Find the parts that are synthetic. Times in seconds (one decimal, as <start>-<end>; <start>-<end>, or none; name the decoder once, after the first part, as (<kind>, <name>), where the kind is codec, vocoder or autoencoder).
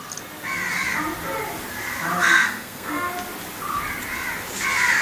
2.2-3.1 (codec, SNAC)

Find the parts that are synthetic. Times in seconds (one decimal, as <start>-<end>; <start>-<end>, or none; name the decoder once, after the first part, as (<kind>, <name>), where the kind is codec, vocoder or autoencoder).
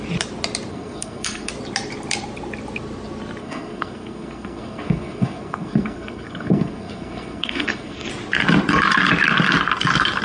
0.7-1.5 (codec, SNAC); 3.4-8.1